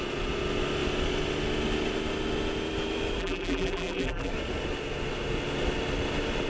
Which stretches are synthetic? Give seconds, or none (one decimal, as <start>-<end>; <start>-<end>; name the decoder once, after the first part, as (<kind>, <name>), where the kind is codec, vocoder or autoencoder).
3.2-4.3 (vocoder, BigVGAN v2)